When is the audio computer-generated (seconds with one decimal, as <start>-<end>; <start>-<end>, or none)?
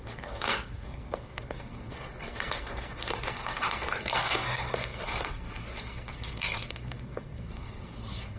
0.0-8.4